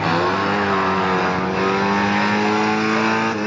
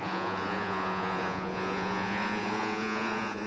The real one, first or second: first